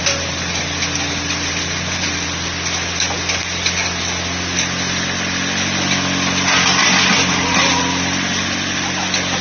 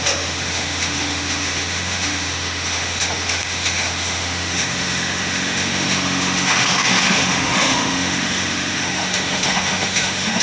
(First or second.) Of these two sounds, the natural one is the first